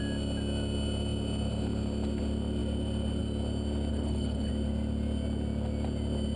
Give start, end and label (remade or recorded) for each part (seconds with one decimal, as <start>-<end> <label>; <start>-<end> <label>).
0.0-3.9 recorded; 3.9-4.5 remade; 4.5-6.4 recorded